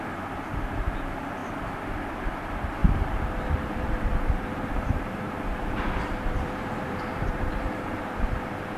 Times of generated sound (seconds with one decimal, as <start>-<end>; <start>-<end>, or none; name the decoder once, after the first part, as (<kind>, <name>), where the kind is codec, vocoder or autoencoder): 2.8-8.0 (vocoder, BigVGAN v2)